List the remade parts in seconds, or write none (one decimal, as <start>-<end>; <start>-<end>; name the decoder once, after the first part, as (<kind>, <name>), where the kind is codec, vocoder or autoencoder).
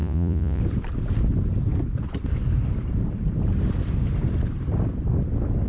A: 0.0-0.6 (vocoder, Vocos)